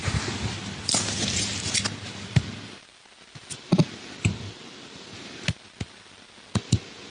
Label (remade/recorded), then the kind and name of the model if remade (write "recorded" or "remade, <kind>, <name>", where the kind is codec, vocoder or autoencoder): recorded